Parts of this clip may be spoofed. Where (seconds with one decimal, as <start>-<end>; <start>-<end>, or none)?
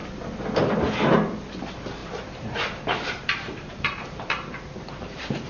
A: 2.0-5.5